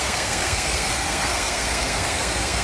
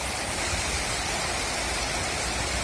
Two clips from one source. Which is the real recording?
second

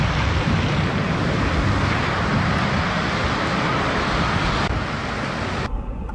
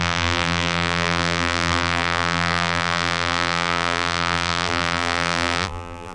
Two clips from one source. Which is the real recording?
first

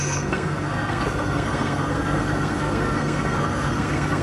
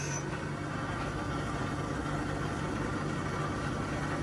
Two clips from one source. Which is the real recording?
second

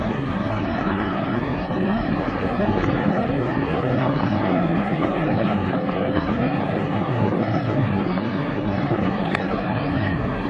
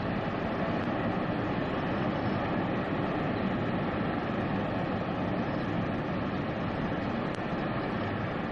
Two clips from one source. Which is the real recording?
second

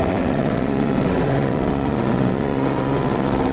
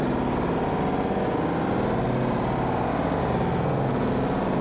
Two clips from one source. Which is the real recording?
second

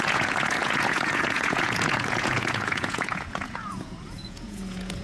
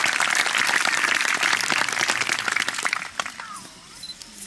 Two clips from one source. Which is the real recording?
second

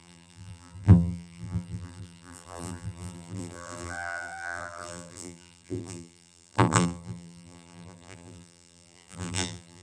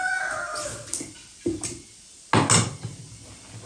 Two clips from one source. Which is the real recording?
second